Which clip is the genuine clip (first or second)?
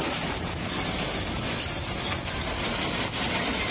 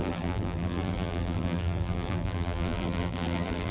first